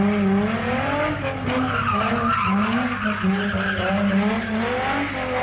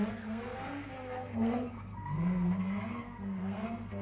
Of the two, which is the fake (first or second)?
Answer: second